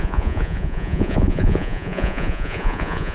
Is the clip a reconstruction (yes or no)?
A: yes